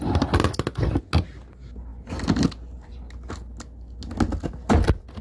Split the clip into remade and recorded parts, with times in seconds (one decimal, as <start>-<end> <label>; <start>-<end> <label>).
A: 0.0-5.2 recorded